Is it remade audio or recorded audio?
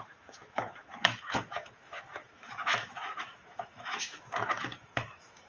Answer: remade